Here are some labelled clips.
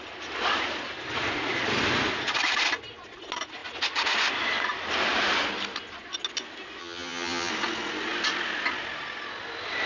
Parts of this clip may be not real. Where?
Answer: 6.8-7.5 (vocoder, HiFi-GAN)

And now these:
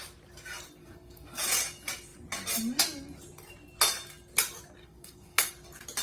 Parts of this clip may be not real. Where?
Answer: 0.8-1.4 (codec, SNAC); 4.8-5.5

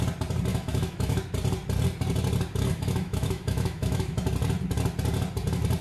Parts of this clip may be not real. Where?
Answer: 0.5-1.2 (autoencoder, DAC-VAE); 2.7-4.2